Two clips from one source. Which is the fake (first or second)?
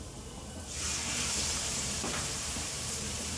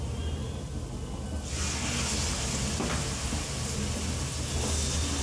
first